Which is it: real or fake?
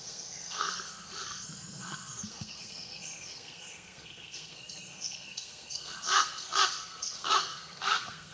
fake